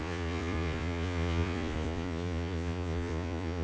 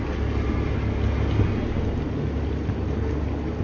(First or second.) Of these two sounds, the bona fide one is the second